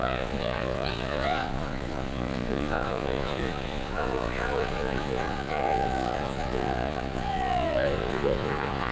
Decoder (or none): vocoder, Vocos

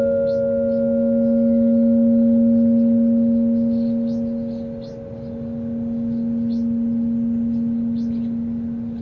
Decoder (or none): none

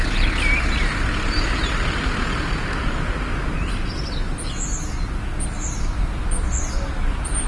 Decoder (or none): none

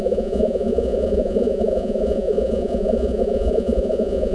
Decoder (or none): vocoder, Vocos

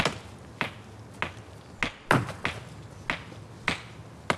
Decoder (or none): none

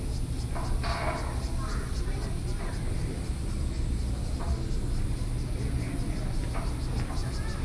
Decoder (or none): none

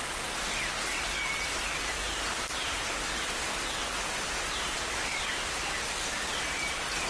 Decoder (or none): none